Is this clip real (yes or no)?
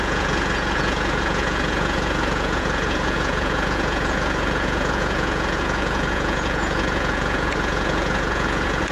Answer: no